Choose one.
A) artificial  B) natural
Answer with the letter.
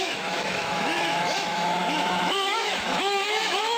A